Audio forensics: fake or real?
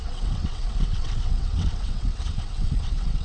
fake